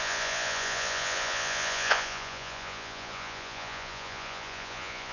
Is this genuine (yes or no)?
no